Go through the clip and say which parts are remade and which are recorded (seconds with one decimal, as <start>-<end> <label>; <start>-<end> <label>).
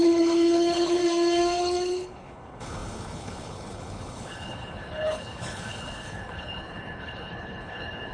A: 0.0-1.0 remade; 1.0-1.6 recorded; 1.6-8.1 remade